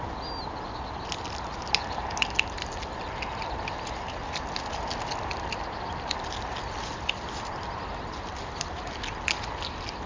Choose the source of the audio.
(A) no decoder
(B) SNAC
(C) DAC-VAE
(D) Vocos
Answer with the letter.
A